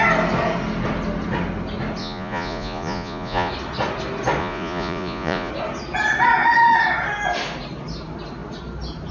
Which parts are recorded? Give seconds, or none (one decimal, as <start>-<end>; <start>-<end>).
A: 0.0-2.0; 3.5-4.4; 5.5-9.1